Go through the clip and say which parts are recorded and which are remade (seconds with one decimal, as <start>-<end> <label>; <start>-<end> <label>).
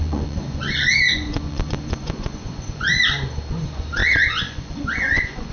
0.0-2.9 remade; 2.9-3.5 recorded; 3.5-5.5 remade